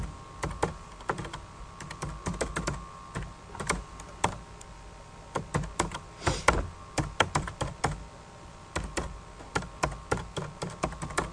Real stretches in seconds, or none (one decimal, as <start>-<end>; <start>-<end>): 0.0-11.3